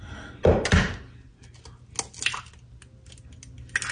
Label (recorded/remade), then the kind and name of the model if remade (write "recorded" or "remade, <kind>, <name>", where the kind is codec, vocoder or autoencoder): recorded